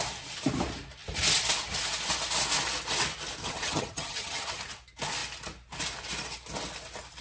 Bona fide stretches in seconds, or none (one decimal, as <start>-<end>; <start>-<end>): 0.0-3.4; 4.6-7.2